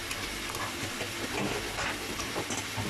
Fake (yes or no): no